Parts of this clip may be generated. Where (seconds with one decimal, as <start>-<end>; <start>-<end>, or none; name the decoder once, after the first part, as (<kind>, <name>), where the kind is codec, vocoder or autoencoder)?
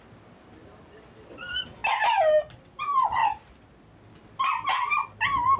none